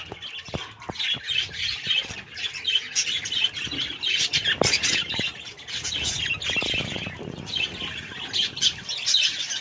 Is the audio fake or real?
real